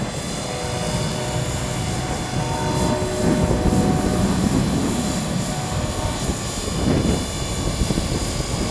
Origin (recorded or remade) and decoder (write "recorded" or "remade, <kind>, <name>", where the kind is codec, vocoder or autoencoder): recorded